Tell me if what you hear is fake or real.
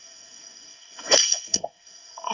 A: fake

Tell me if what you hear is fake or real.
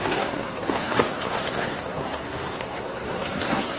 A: fake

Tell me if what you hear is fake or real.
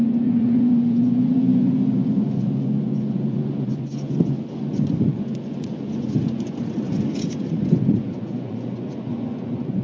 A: fake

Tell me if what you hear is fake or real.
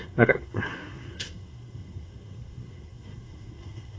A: fake